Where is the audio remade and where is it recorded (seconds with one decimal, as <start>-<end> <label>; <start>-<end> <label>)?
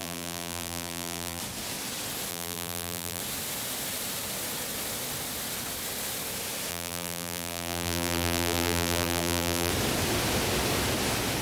0.0-1.4 remade; 1.4-2.3 recorded; 2.3-3.2 remade; 3.2-6.7 recorded; 6.7-9.7 remade; 9.7-11.4 recorded